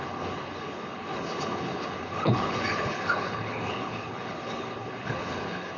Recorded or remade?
remade